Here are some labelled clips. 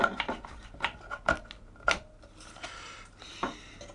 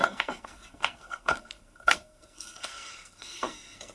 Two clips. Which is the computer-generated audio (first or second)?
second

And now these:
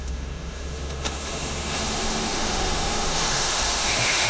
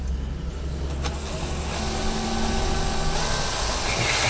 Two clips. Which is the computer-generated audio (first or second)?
first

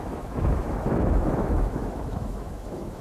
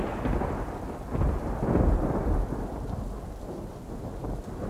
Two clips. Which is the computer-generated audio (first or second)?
first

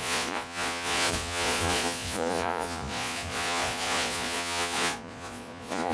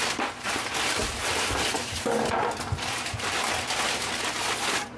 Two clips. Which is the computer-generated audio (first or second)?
first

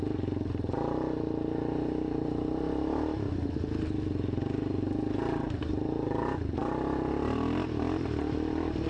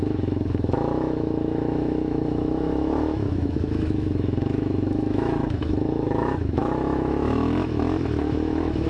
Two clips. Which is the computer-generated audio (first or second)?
second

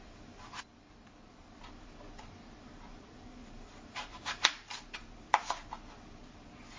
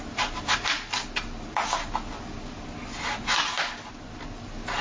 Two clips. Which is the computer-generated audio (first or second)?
first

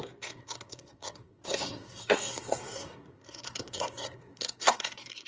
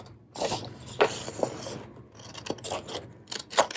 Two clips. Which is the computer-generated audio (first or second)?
first